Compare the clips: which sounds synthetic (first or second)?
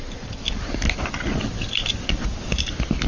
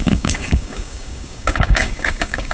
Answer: second